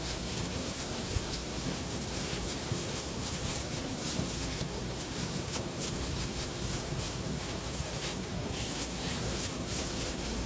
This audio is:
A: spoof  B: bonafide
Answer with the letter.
A